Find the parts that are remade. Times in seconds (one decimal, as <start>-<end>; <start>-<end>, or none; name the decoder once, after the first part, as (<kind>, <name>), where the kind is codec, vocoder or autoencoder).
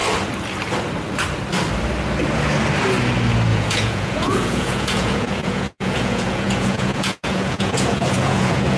3.5-8.8 (vocoder, Vocos)